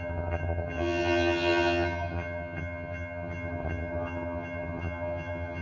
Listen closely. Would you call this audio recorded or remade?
remade